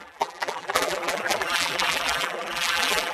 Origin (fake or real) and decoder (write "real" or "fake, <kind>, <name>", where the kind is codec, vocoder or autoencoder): fake, vocoder, BigVGAN v2